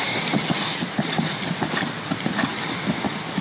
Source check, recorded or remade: recorded